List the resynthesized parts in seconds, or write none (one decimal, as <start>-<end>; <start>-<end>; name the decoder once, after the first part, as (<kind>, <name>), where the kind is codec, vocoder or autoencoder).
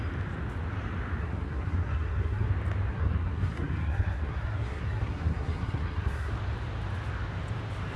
1.2-2.5 (codec, SNAC); 2.9-6.3